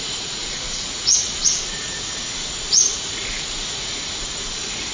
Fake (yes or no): yes